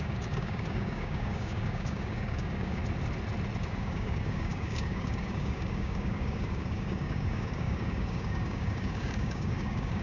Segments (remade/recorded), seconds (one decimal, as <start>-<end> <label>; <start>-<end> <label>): 0.0-2.8 remade; 2.8-3.7 recorded; 3.7-10.0 remade

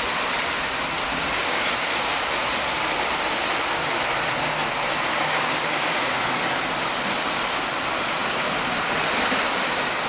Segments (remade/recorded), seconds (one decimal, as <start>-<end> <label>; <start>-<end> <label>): 0.0-1.0 recorded; 1.0-1.6 remade; 1.6-5.1 recorded; 5.1-6.2 remade; 6.2-10.1 recorded

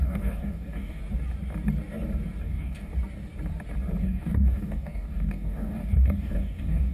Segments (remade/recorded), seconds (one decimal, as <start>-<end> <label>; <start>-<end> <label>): 0.0-1.0 remade; 1.0-2.4 recorded; 2.4-2.9 remade; 2.9-4.0 recorded; 4.0-6.9 remade

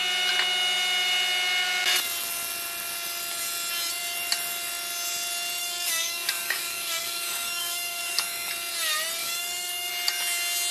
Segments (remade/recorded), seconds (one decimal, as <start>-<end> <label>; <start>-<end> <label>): 0.0-5.6 recorded; 5.6-8.5 remade; 8.5-9.2 recorded; 9.2-9.9 remade; 9.9-10.7 recorded

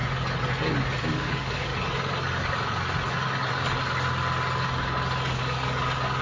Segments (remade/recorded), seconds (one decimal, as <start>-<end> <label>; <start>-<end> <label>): 0.0-1.1 recorded; 1.1-1.7 remade; 1.7-5.4 recorded; 5.4-6.2 remade

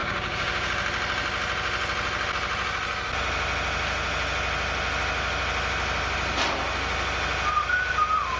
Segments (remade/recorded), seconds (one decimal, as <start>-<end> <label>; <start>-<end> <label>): 0.0-0.7 remade; 0.7-8.4 recorded

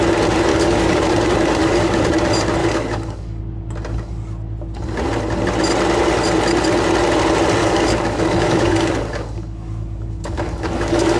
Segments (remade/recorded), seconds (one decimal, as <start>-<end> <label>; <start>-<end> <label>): 0.0-0.5 recorded; 0.5-1.0 remade; 1.0-1.6 recorded; 1.6-2.1 remade; 2.1-2.6 recorded; 2.6-3.4 remade; 3.4-7.6 recorded; 7.6-11.2 remade

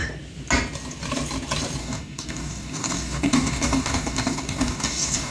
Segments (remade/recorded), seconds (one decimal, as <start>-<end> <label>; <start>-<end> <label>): 0.0-1.8 recorded; 1.8-5.3 remade